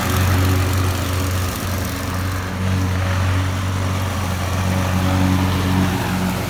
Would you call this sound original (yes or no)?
yes